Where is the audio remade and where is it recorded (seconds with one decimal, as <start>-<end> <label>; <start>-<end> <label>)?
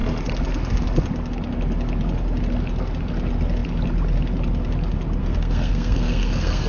0.0-5.2 recorded; 5.2-6.7 remade